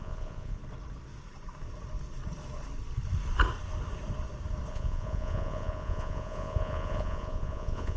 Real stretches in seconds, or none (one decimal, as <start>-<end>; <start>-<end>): 0.6-4.7